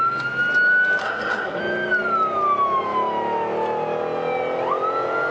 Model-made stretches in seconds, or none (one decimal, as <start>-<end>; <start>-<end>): 1.0-1.6